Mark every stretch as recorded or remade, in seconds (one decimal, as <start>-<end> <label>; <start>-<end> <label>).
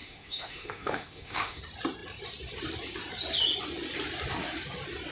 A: 0.0-1.6 remade; 1.6-5.1 recorded